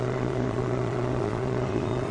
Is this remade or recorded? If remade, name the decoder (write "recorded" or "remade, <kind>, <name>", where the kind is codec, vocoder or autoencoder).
remade, vocoder, Vocos